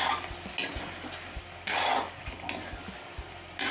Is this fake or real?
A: real